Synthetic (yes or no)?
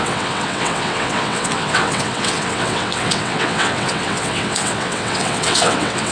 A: yes